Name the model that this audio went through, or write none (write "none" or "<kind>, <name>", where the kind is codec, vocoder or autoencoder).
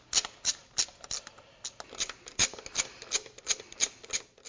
none